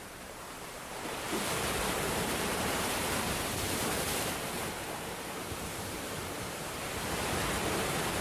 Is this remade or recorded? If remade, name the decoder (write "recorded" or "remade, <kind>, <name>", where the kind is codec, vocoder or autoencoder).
remade, vocoder, BigVGAN v2